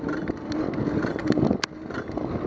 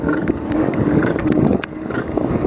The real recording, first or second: first